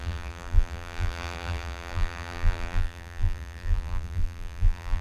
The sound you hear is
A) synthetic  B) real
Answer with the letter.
A